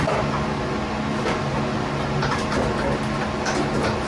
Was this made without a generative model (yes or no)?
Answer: yes